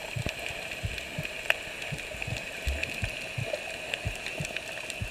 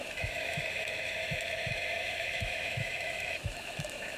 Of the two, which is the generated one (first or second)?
second